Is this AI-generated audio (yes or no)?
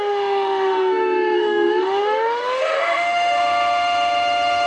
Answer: yes